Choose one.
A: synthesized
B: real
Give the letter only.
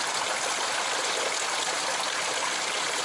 B